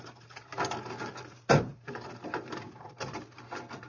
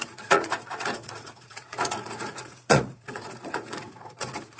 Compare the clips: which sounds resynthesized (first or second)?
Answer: second